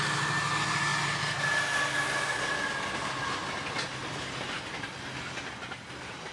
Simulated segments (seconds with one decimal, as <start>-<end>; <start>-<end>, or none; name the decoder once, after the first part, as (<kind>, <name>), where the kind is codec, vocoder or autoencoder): 3.9-4.9 (vocoder, BigVGAN v2); 5.6-6.3

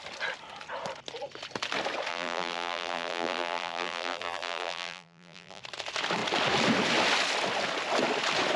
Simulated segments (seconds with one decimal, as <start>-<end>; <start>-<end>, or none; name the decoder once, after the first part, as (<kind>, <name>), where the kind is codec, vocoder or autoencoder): 2.1-5.6 (vocoder, BigVGAN v2)